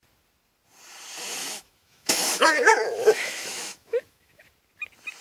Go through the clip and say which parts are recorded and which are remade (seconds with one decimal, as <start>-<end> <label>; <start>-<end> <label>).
0.0-1.4 recorded; 1.4-4.5 remade; 4.5-5.2 recorded